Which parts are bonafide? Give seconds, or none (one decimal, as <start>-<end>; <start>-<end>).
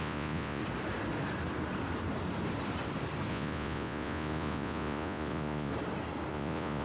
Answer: 0.6-3.3; 5.7-6.3